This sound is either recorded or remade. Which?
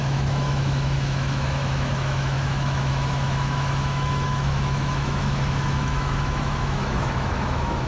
remade